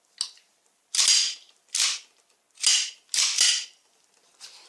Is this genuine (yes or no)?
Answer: yes